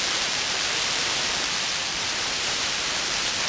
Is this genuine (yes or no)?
no